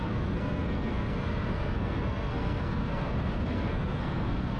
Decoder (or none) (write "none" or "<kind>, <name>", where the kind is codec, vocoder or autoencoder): codec, SNAC